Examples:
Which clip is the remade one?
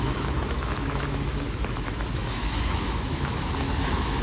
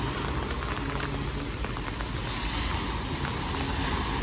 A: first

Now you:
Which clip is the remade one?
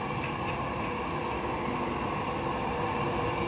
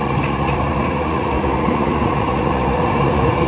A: second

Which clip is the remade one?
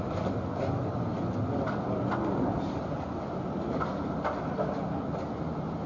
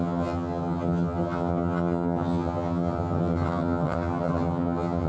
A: second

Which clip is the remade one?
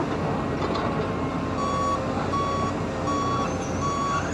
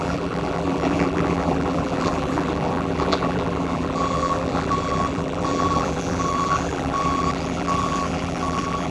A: second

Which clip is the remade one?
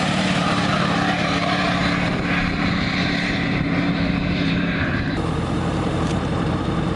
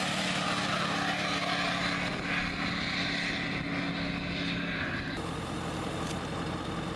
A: first